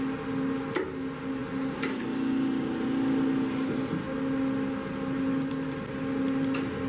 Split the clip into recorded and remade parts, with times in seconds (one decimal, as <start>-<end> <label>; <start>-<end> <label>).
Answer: 0.0-6.9 recorded